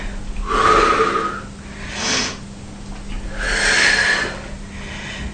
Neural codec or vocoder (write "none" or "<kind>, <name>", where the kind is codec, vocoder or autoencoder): none